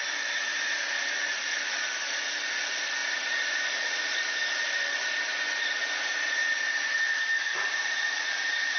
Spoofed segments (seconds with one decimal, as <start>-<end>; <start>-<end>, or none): 0.0-8.8